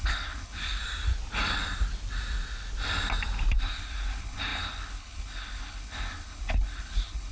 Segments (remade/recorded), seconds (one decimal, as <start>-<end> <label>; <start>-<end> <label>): 0.0-0.8 remade; 0.8-3.6 recorded; 3.6-7.3 remade